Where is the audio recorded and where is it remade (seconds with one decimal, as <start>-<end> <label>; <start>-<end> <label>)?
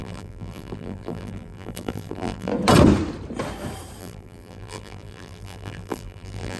0.0-2.5 remade; 2.5-4.0 recorded; 4.0-6.6 remade